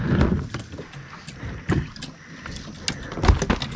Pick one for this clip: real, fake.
real